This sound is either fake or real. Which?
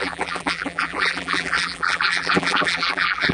fake